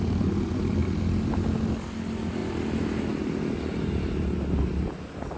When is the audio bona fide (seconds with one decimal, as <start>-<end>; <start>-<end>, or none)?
0.0-5.4